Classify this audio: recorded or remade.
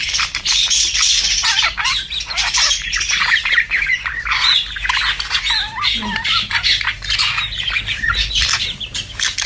remade